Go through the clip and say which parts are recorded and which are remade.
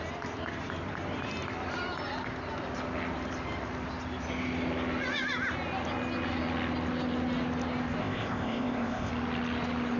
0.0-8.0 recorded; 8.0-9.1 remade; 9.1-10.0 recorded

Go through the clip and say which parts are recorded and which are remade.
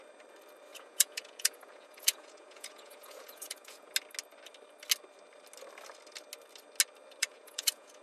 0.0-0.7 recorded; 0.7-3.9 remade; 3.9-7.2 recorded; 7.2-8.0 remade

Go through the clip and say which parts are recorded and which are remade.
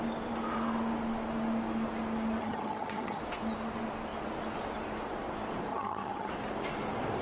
0.0-2.4 recorded; 2.4-3.2 remade; 3.2-5.7 recorded; 5.7-6.3 remade; 6.3-7.2 recorded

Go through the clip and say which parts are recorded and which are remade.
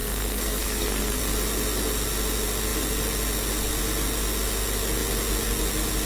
0.0-1.2 remade; 1.2-6.1 recorded